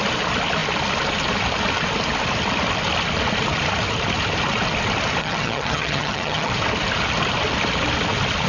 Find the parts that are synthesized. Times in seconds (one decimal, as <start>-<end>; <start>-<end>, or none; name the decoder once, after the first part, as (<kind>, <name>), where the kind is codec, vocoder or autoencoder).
5.2-6.5 (vocoder, HiFi-GAN)